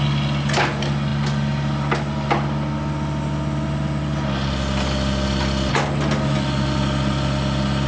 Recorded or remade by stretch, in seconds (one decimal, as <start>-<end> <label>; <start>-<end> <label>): 0.0-7.9 recorded